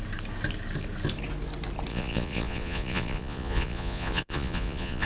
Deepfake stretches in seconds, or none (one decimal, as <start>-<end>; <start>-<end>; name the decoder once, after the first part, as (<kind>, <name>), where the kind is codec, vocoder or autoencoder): 1.9-5.1 (vocoder, Vocos)